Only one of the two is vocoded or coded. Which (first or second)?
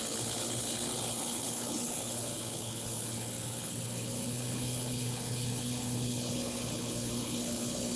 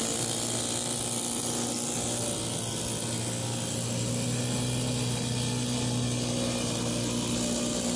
first